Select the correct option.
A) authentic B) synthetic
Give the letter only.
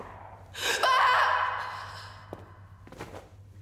A